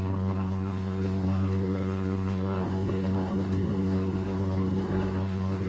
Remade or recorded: remade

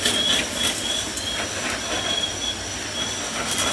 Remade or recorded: recorded